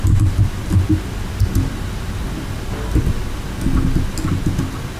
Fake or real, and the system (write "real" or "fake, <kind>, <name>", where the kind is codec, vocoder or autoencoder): real